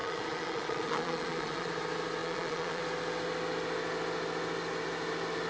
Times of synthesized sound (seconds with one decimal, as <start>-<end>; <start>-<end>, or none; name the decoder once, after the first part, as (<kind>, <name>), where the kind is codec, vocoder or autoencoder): 0.0-1.7 (vocoder, Vocos); 2.2-2.8